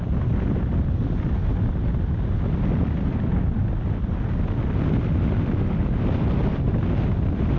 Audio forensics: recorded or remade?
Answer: recorded